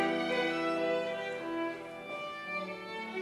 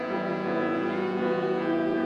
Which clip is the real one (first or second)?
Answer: first